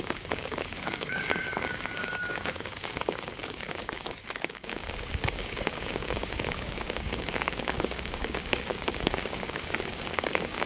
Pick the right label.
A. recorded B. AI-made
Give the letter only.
B